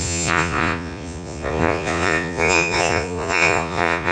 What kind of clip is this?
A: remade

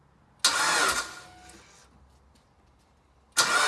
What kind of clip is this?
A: recorded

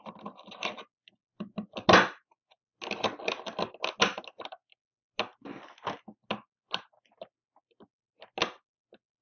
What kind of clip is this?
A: recorded